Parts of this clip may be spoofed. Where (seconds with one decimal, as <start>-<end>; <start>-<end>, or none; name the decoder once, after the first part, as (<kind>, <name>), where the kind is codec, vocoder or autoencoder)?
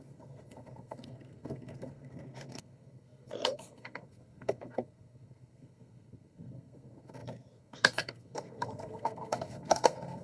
0.0-10.2 (codec, SNAC)